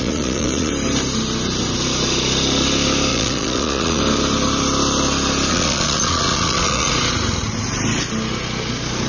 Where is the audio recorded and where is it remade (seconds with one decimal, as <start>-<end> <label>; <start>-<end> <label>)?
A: 0.0-0.7 remade; 0.7-3.1 recorded; 3.1-4.0 remade; 4.0-5.5 recorded; 5.5-6.9 remade; 6.9-9.1 recorded